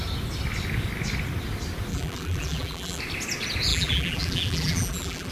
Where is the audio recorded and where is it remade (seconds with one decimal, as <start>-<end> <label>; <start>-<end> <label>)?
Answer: 0.0-1.9 recorded; 1.9-3.0 remade; 3.0-3.7 recorded; 3.7-5.3 remade